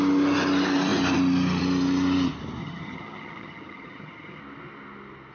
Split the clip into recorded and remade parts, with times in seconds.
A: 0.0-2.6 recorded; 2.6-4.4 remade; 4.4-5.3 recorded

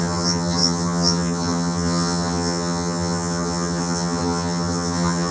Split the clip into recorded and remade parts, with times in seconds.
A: 0.0-5.3 remade

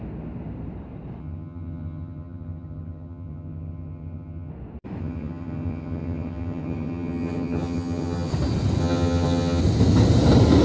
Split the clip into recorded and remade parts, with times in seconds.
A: 0.0-1.2 recorded; 1.2-4.5 remade; 4.5-5.0 recorded; 5.0-8.3 remade; 8.3-8.8 recorded; 8.8-9.6 remade; 9.6-10.6 recorded

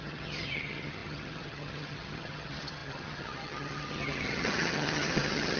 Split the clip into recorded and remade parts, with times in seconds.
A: 0.0-5.6 remade

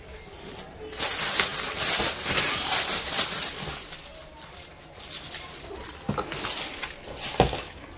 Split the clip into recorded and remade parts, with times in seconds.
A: 0.0-8.0 recorded

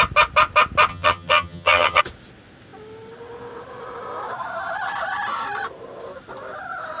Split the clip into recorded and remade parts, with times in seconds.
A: 0.0-0.9 recorded; 0.9-2.0 remade; 2.0-7.0 recorded

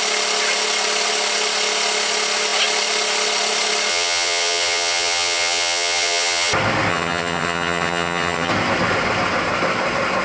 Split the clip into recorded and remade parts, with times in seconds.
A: 0.0-3.9 recorded; 3.9-6.5 remade; 6.5-6.9 recorded; 6.9-8.5 remade; 8.5-10.2 recorded

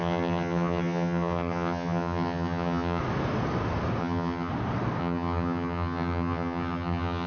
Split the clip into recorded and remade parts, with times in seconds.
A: 0.0-3.0 remade; 3.0-4.0 recorded; 4.0-4.5 remade; 4.5-5.0 recorded; 5.0-7.3 remade